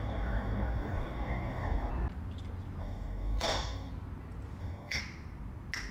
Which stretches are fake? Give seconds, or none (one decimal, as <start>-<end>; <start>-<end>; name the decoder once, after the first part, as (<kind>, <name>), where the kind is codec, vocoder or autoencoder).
0.0-1.9 (codec, DAC); 2.8-3.9; 4.6-5.0